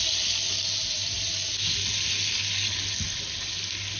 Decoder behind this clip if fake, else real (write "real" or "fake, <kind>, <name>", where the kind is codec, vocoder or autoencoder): real